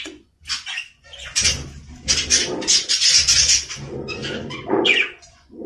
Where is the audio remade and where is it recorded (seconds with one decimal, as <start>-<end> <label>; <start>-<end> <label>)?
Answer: 0.0-1.5 remade; 1.5-3.4 recorded; 3.4-5.7 remade